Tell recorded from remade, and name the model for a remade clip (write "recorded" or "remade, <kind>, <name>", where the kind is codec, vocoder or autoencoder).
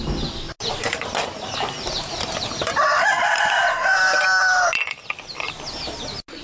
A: recorded